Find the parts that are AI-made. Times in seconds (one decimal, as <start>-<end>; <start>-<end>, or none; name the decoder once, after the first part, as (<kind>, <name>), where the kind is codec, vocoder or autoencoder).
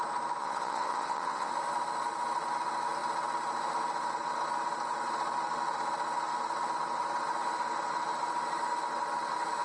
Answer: 0.4-1.5 (vocoder, WaveNeXt)